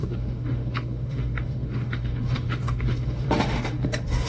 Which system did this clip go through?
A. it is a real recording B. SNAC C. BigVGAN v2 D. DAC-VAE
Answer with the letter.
D